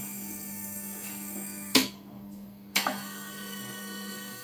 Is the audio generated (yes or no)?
yes